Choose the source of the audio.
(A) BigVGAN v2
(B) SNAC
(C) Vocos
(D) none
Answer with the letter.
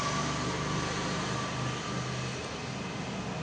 D